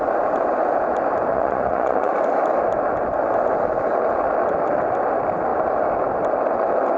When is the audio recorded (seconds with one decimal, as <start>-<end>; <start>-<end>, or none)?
0.0-1.3; 2.1-7.0